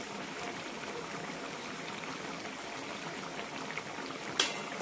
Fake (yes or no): no